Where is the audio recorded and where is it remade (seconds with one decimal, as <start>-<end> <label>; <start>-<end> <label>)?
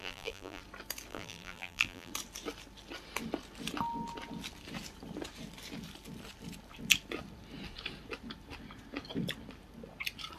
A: 0.0-0.6 remade; 0.6-1.1 recorded; 1.1-2.1 remade; 2.1-10.4 recorded